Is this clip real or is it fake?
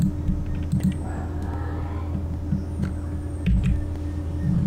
real